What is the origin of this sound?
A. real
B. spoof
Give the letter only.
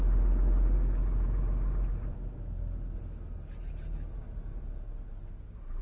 A